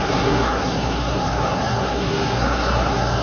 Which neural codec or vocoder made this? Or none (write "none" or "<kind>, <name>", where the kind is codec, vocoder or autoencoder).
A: codec, SNAC